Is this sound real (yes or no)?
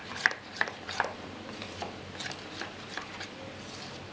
yes